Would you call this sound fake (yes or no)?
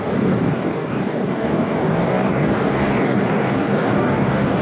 yes